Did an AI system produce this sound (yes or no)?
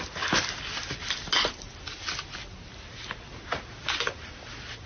no